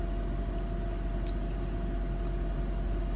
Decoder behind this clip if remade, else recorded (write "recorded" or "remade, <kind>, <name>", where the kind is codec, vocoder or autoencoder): recorded